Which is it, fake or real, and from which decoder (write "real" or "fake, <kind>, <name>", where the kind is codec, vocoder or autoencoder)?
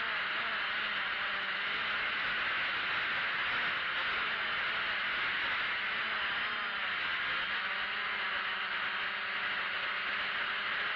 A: real